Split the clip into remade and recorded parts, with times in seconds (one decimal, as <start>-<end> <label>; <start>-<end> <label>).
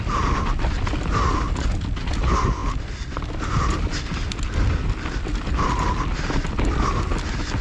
0.0-7.6 recorded